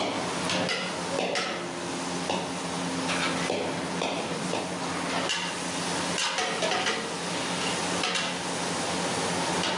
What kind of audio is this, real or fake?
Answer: real